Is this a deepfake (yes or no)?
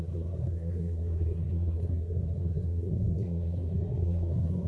yes